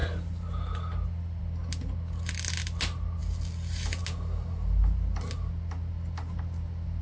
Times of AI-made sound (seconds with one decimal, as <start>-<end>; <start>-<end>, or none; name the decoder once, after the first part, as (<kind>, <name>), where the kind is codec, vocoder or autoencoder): none